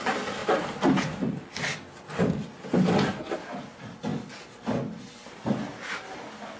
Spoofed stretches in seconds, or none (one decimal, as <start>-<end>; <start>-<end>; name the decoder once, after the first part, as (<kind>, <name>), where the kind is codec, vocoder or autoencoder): none